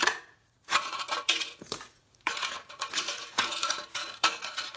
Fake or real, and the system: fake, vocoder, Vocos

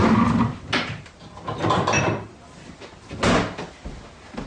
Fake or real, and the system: real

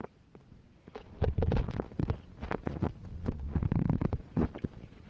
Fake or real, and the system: fake, vocoder, Vocos